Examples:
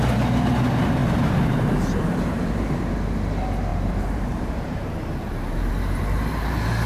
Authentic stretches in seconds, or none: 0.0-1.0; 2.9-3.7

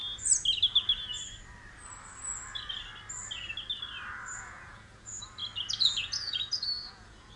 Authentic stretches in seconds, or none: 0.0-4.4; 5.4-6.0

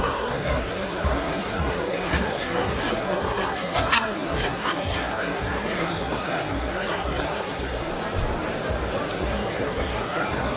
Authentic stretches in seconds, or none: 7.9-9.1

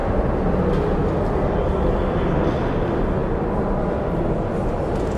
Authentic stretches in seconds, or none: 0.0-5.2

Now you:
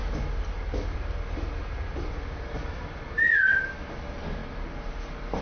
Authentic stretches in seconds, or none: 0.0-5.4

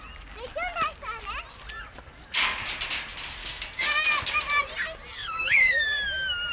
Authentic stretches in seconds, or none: 0.0-3.4; 4.1-5.2; 5.8-6.5

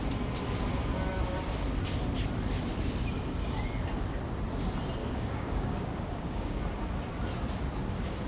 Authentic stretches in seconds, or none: 0.0-5.0; 6.6-8.3